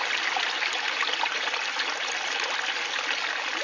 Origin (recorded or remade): recorded